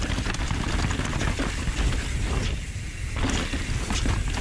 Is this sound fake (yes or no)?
no